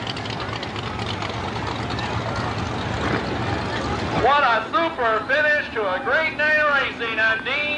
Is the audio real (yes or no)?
yes